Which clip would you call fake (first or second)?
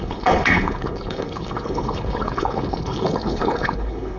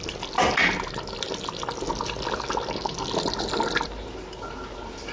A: first